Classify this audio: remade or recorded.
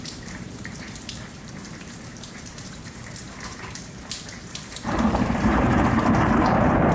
remade